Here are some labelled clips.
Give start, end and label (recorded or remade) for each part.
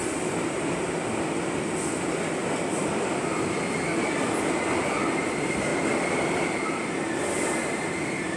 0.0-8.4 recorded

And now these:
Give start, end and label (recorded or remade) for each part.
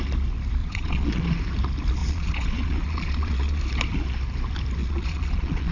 0.0-0.6 recorded; 0.6-1.2 remade; 1.2-2.0 recorded; 2.0-3.6 remade; 3.6-4.8 recorded; 4.8-5.7 remade